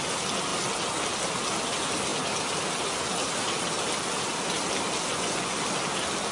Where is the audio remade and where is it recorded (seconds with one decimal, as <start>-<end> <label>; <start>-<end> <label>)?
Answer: 0.0-5.1 recorded; 5.1-5.6 remade; 5.6-6.3 recorded